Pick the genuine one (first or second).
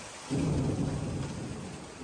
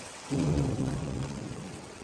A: first